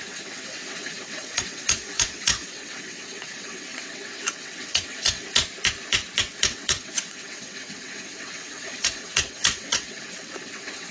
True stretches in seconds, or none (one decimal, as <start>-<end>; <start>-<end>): 5.4-6.2